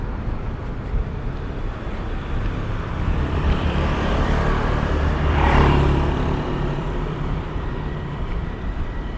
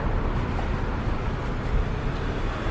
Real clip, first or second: second